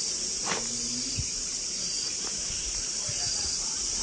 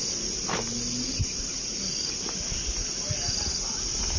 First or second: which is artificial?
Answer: first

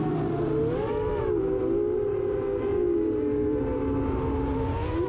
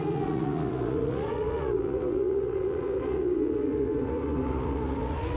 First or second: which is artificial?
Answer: second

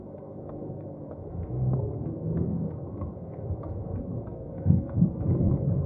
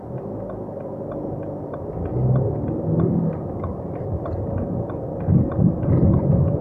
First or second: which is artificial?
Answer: first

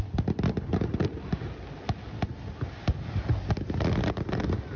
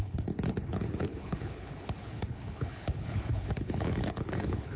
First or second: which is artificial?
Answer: second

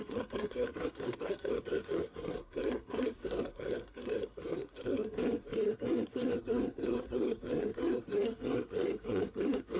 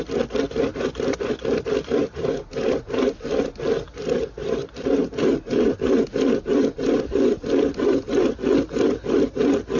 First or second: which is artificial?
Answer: first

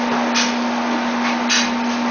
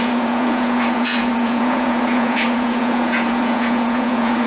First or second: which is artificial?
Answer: second